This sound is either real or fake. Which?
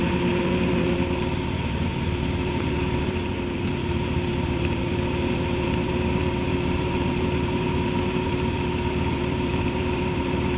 fake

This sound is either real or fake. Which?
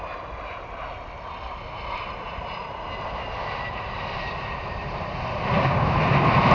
real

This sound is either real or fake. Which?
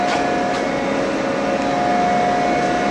real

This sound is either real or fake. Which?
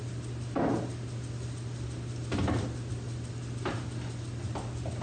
real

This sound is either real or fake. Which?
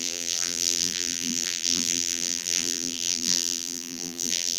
fake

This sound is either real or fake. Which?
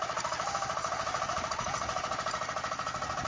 real